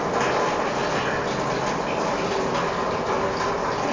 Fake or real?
real